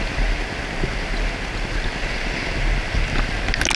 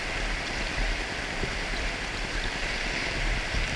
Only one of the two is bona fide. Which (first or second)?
first